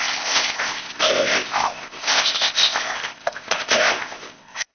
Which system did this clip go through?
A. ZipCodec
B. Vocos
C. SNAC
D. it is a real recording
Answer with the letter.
A